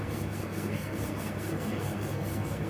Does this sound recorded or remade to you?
remade